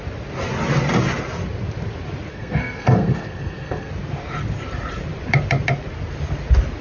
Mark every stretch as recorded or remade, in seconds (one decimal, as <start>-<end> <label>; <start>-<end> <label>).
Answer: 0.0-2.3 recorded; 2.3-3.9 remade; 3.9-6.8 recorded